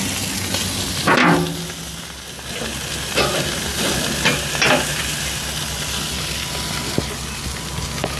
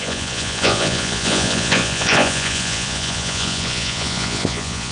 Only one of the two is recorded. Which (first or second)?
first